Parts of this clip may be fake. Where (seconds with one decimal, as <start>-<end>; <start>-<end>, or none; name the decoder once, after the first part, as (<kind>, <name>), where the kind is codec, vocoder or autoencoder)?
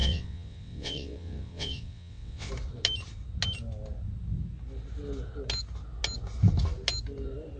0.0-2.5 (vocoder, WaveNeXt)